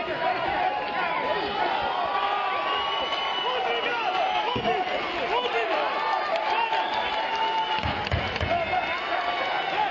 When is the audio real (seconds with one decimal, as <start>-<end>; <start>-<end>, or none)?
0.0-9.9